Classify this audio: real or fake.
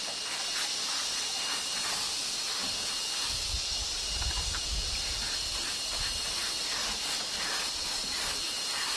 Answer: real